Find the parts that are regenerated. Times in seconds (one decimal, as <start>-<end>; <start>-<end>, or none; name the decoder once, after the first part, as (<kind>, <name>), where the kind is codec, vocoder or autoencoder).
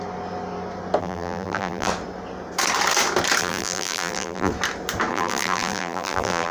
1.0-1.9 (vocoder, BigVGAN v2); 3.4-4.5; 5.1-6.5